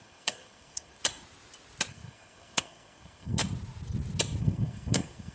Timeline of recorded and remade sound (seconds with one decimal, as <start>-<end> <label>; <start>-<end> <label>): 0.0-1.0 remade; 1.0-1.9 recorded; 1.9-3.4 remade; 3.4-4.4 recorded; 4.4-5.3 remade